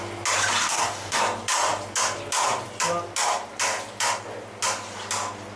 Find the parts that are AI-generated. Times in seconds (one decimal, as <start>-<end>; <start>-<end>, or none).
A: 0.6-1.2